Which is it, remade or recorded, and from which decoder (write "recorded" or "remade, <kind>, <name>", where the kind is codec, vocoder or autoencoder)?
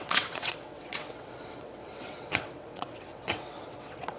remade, vocoder, WaveNeXt